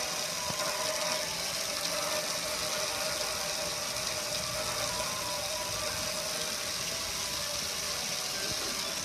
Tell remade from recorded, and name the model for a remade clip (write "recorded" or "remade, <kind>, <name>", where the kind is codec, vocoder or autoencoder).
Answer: recorded